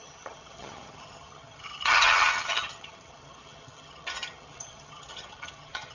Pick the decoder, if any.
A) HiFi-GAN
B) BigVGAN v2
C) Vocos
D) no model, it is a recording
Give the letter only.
A